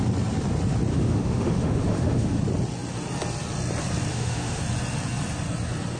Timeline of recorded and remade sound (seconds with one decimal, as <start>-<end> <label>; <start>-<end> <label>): 0.0-0.9 recorded; 0.9-2.4 remade; 2.4-4.1 recorded; 4.1-4.6 remade; 4.6-6.0 recorded